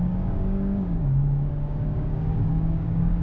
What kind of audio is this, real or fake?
fake